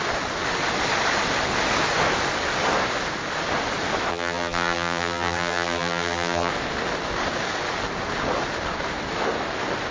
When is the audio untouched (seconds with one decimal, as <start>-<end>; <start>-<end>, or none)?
0.0-4.1; 6.5-9.9